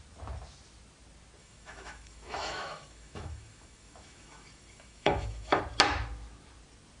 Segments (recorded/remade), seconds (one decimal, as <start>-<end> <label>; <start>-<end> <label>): 0.0-1.4 recorded; 1.4-5.6 remade; 5.6-7.0 recorded